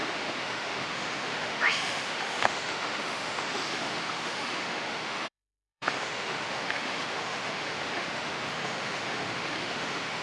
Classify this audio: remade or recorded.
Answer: remade